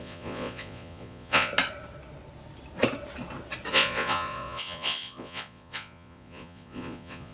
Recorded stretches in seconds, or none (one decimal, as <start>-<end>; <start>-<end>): 1.5-3.7